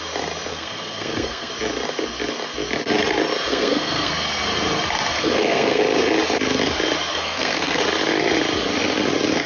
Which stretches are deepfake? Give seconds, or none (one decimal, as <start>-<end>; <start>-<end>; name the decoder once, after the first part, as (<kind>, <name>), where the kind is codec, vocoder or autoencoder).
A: 0.5-1.5 (codec, SNAC); 3.5-4.1; 5.1-5.8; 7.1-7.8